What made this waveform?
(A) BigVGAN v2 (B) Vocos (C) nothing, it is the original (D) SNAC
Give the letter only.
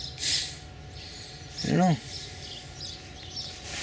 C